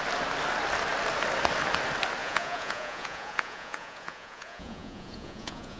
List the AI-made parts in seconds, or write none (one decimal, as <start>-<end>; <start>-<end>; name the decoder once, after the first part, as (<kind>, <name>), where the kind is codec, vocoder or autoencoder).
2.2-5.8 (vocoder, Vocos)